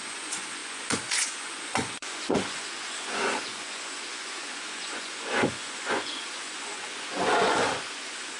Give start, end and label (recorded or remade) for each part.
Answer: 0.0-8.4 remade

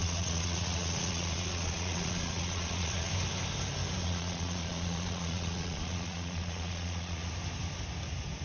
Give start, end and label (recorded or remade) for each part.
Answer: 0.0-3.1 remade; 3.1-4.0 recorded; 4.0-7.3 remade; 7.3-8.4 recorded